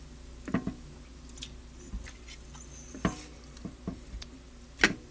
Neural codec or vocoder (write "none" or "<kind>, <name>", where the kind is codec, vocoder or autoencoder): none